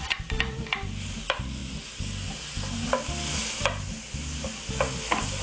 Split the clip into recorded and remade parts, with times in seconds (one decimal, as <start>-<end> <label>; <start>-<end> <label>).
0.0-5.4 recorded